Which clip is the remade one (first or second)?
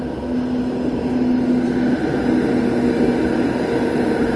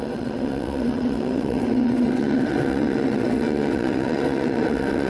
second